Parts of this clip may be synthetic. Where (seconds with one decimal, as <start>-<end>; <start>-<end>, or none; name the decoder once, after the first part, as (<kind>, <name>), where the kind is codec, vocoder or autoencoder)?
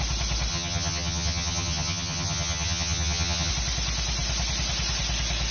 0.5-3.5 (vocoder, HiFi-GAN)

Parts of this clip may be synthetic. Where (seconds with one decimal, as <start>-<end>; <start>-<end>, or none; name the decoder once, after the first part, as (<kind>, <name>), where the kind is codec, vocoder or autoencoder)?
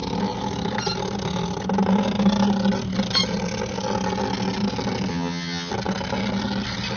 5.1-5.7 (vocoder, HiFi-GAN)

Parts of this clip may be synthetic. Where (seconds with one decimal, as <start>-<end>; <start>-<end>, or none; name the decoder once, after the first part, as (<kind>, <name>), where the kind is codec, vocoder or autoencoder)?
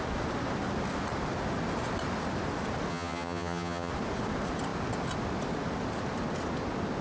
2.9-3.9 (vocoder, HiFi-GAN)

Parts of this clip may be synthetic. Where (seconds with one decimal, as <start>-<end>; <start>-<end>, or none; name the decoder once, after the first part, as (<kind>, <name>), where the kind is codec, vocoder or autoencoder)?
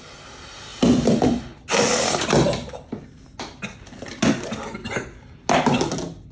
none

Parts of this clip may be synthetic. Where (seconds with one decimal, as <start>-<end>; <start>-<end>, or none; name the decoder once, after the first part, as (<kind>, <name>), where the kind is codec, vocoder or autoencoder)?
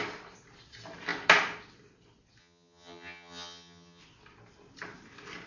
2.4-4.0 (vocoder, HiFi-GAN)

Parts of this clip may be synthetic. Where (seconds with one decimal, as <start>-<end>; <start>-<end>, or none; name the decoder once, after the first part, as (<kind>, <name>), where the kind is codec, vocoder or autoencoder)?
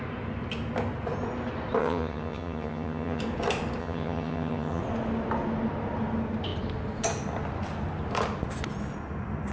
1.8-3.2 (vocoder, HiFi-GAN); 3.8-4.8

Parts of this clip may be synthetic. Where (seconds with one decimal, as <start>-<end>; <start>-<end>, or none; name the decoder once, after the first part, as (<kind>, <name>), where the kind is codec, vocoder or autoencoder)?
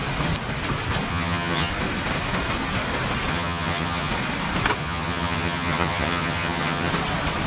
1.1-1.7 (vocoder, HiFi-GAN); 3.3-4.1; 4.8-6.9